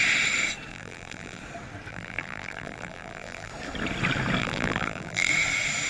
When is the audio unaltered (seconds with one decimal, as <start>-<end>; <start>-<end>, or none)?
0.0-0.7; 1.4-1.9; 3.5-4.4; 5.3-5.9